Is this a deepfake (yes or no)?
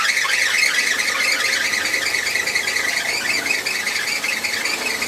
no